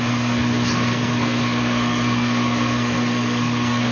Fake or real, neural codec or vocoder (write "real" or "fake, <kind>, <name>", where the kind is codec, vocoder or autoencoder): fake, codec, SNAC